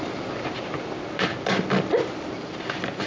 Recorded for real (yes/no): no